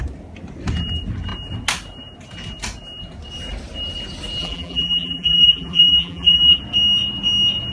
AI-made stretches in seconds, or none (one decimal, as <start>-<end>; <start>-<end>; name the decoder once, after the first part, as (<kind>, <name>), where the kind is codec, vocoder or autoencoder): 4.4-6.6 (vocoder, BigVGAN v2)